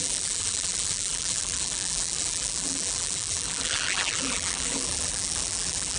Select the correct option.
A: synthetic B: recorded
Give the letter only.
A